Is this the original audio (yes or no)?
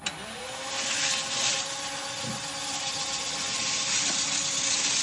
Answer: yes